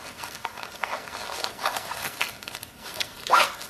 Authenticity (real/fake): fake